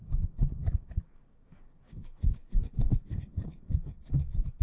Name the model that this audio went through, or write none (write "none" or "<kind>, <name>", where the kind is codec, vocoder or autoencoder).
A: codec, DAC